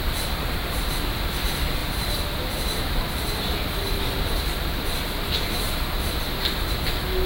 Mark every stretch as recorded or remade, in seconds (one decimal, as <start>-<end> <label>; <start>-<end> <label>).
0.0-1.8 recorded; 1.8-5.6 remade; 5.6-7.3 recorded